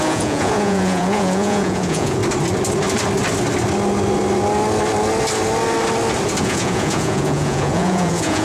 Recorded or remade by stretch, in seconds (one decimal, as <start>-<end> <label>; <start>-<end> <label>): 0.0-2.2 remade; 2.2-6.4 recorded; 6.4-8.4 remade